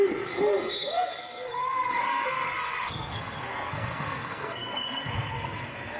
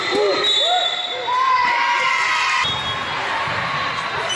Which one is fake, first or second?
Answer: first